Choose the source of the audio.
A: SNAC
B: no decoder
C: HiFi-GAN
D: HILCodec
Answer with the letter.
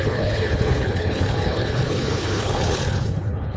D